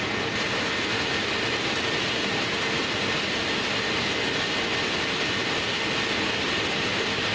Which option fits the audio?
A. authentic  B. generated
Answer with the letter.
A